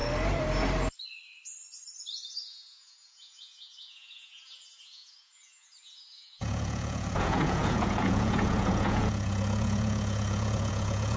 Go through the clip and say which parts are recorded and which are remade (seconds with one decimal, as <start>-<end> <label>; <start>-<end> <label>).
0.0-2.3 recorded; 2.3-11.2 remade